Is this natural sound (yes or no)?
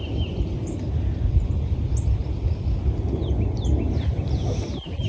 yes